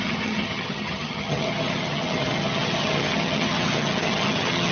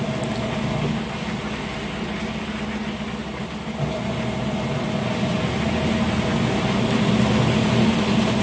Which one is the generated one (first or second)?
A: first